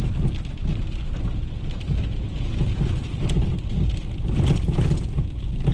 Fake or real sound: real